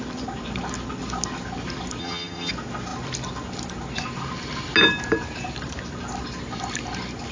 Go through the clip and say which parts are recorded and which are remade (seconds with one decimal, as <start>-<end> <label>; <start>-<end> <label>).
0.0-2.0 recorded; 2.0-2.5 remade; 2.5-7.3 recorded